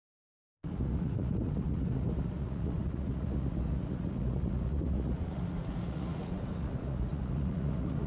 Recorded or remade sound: remade